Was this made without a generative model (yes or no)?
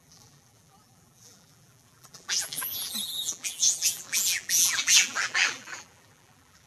no